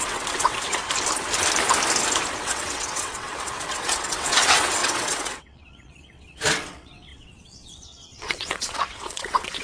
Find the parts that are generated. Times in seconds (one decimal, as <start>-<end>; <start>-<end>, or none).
0.0-0.8; 2.4-9.6